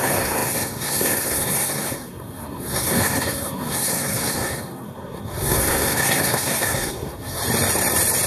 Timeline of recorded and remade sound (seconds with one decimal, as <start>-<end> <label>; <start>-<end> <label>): 0.0-7.4 remade; 7.4-8.3 recorded